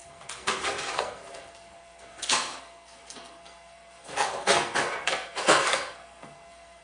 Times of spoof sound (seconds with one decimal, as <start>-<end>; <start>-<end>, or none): 0.0-6.8